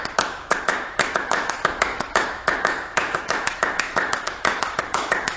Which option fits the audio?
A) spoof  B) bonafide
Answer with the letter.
A